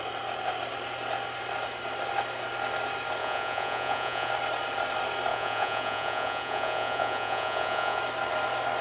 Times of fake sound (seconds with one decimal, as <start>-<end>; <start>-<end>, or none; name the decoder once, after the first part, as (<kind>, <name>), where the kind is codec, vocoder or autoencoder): 3.2-4.3 (vocoder, Vocos); 5.3-8.0